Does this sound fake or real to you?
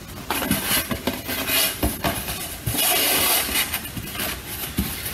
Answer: real